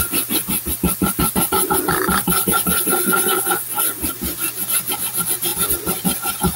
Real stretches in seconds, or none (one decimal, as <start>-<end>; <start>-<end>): 0.0-6.6